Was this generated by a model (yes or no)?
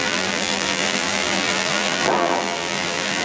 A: yes